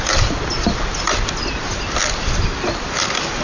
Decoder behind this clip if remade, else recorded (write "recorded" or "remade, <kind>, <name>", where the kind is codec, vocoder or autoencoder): remade, vocoder, BigVGAN v2